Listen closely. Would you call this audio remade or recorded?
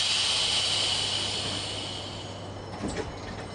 recorded